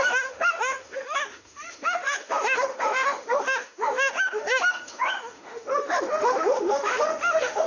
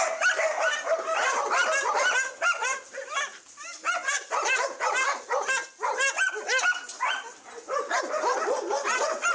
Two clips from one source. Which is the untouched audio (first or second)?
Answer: second